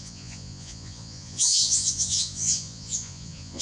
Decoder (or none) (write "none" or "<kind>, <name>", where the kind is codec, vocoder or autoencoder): vocoder, Vocos